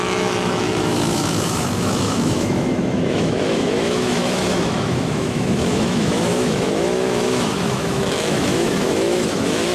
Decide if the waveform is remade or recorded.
remade